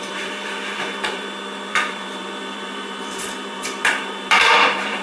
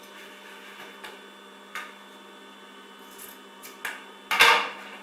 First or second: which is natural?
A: second